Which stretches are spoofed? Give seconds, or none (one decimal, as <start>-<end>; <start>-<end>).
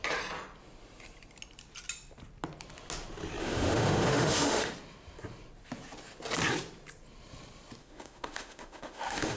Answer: 3.4-4.7; 7.8-9.4